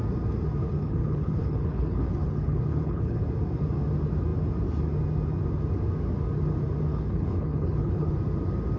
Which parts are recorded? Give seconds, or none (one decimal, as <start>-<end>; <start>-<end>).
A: 0.0-0.6; 3.2-6.9; 8.1-8.8